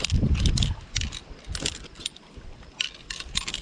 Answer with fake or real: real